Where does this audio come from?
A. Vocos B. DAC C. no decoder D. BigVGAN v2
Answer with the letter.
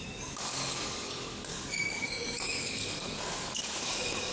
B